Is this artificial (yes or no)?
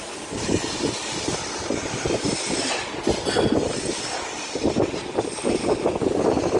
no